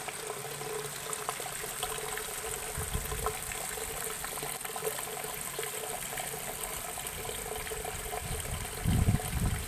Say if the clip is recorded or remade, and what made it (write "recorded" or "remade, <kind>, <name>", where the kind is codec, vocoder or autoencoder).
recorded